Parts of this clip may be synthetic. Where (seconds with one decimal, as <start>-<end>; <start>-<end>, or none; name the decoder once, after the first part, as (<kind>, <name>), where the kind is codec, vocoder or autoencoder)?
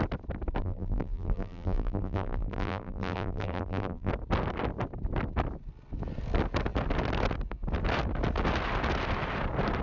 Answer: 0.6-4.1 (vocoder, BigVGAN v2)